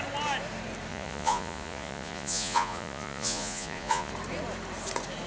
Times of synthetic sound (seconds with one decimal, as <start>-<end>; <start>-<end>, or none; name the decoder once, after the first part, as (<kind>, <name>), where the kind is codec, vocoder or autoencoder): 0.9-4.1 (vocoder, Vocos)